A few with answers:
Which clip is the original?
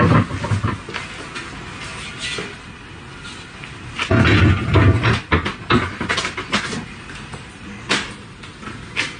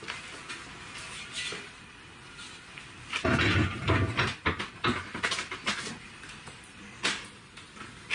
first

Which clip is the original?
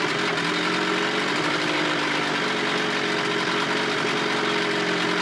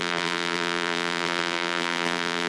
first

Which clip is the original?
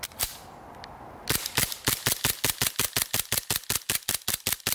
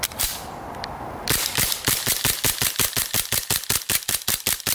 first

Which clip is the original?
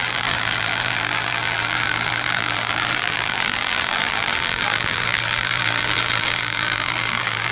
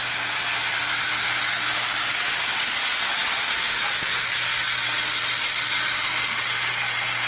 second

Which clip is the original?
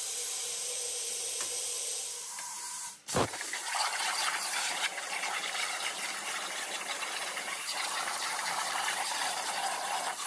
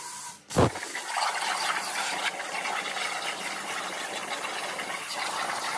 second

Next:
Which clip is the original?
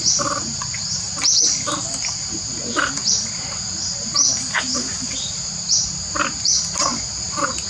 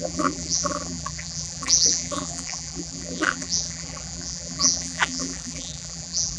first